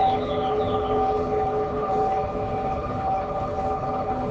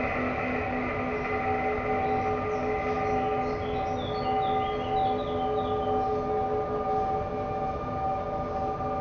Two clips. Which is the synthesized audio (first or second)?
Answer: first